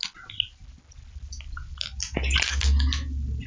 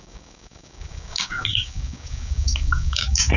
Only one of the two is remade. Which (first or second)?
second